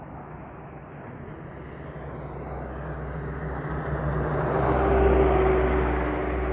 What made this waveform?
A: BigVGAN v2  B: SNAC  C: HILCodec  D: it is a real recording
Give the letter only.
D